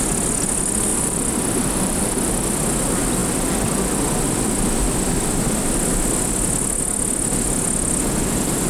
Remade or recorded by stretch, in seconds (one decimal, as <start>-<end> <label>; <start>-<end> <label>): 0.0-0.9 recorded; 0.9-2.3 remade; 2.3-8.7 recorded